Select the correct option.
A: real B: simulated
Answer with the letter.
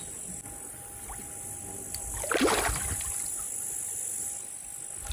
A